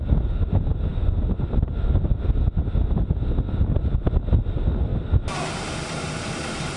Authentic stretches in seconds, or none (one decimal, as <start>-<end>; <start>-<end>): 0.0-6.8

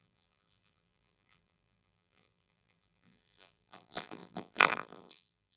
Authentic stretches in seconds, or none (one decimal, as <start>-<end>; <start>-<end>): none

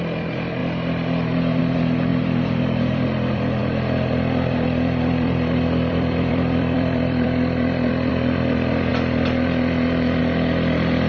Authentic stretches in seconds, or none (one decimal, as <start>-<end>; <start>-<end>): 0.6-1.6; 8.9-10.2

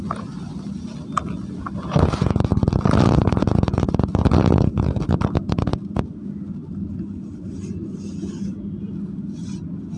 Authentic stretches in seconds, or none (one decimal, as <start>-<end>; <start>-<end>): 0.0-10.0